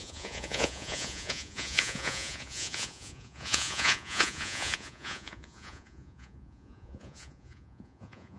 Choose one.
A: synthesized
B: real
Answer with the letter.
A